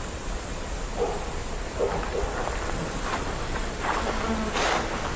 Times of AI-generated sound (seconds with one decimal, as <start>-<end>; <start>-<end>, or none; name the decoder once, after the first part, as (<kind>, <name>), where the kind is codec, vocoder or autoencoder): 0.9-4.0 (vocoder, BigVGAN v2)